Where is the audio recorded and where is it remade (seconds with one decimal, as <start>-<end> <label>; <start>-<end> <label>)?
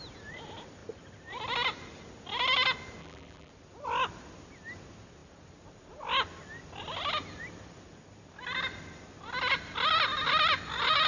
0.0-3.0 recorded; 3.0-3.5 remade; 3.5-11.1 recorded